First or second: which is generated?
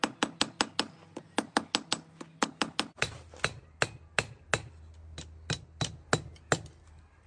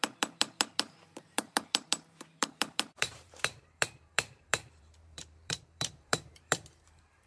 second